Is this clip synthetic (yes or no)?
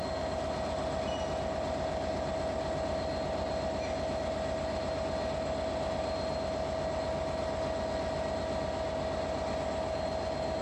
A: no